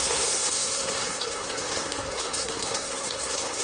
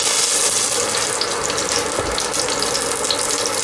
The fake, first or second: first